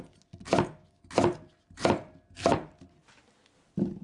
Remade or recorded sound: recorded